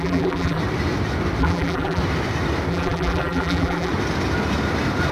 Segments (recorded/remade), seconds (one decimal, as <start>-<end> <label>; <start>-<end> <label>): 0.0-0.6 remade; 0.6-1.4 recorded; 1.4-2.0 remade; 2.0-2.7 recorded; 2.7-3.9 remade; 3.9-5.1 recorded